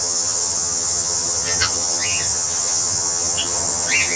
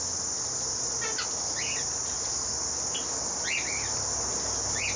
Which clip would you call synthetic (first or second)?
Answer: first